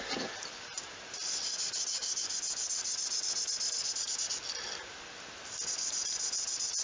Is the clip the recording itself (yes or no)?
yes